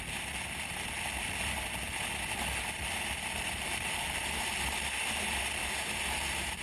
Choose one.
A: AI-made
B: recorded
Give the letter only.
B